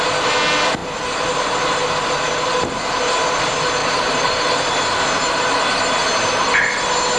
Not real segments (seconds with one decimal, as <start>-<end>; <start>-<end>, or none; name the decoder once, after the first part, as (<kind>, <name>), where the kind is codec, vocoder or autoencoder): 3.8-4.8 (vocoder, BigVGAN v2)